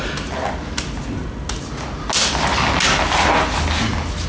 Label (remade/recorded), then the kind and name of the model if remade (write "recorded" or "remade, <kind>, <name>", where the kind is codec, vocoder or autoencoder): recorded